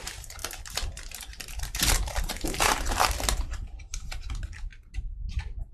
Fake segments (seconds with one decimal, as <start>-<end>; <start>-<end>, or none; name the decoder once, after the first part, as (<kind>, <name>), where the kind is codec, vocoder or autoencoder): 0.0-0.4 (vocoder, BigVGAN v2); 1.6-4.7; 5.3-5.7